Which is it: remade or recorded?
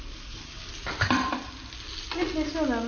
recorded